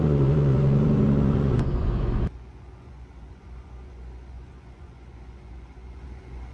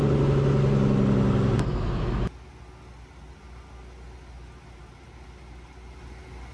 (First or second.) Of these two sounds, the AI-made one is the first